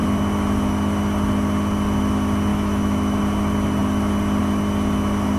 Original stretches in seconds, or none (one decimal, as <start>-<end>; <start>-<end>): 0.0-2.5; 3.2-5.4